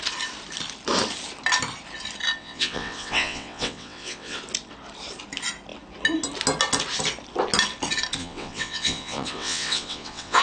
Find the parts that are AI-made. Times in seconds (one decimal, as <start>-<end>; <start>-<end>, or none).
2.4-4.4; 8.2-10.4